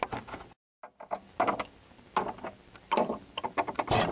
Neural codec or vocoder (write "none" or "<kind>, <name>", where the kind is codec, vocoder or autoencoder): none